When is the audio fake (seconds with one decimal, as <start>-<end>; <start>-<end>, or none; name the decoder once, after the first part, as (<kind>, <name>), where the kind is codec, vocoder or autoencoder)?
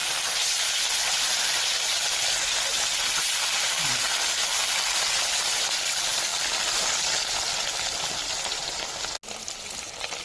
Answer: 0.0-0.7 (vocoder, BigVGAN v2)